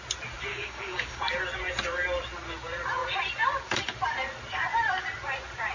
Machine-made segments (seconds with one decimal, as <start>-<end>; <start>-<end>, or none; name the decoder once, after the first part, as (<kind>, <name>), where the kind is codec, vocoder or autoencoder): 0.5-1.2 (codec, DAC)